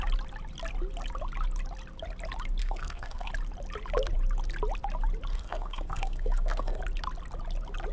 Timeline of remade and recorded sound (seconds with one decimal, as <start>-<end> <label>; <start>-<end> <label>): 0.0-2.6 recorded; 2.6-3.3 remade; 3.3-5.3 recorded; 5.3-6.8 remade; 6.8-7.9 recorded